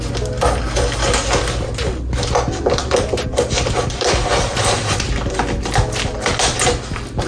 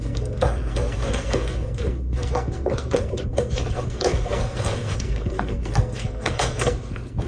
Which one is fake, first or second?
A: second